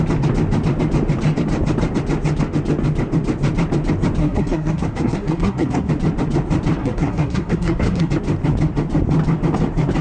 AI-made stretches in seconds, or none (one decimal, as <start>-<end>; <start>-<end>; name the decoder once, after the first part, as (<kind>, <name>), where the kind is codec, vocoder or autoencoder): 4.2-5.9 (codec, SNAC); 6.8-8.1